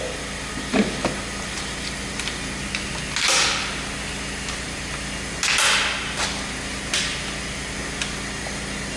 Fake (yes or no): no